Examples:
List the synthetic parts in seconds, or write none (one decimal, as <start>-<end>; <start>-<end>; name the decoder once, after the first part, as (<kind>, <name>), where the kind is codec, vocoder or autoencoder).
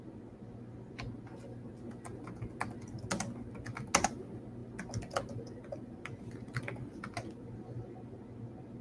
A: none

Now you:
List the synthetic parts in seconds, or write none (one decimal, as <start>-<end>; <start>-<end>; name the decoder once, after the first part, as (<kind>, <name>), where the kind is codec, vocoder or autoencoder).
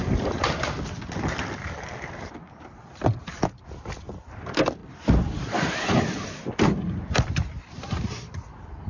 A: 0.0-8.9 (vocoder, BigVGAN v2)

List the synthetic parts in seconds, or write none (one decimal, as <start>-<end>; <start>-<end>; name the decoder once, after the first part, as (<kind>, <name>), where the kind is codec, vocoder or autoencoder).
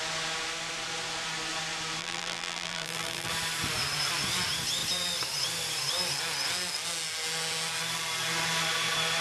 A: 2.0-3.3 (vocoder, BigVGAN v2)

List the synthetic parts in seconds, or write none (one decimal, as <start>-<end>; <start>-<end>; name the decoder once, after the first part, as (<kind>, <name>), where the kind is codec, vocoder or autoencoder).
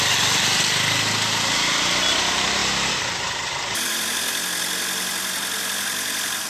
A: none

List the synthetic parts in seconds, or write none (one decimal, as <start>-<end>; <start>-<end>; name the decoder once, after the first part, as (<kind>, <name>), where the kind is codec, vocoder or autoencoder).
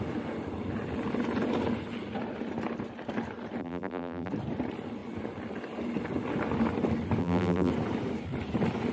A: 3.6-4.3 (vocoder, BigVGAN v2); 7.2-7.7